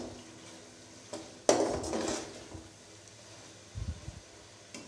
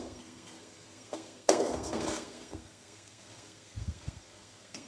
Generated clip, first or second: second